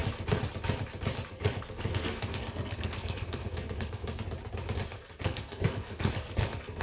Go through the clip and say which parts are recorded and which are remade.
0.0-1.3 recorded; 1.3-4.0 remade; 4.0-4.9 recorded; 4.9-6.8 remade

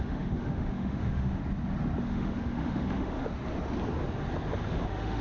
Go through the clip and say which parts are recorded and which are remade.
0.0-1.4 remade; 1.4-2.0 recorded; 2.0-3.2 remade; 3.2-4.7 recorded; 4.7-5.2 remade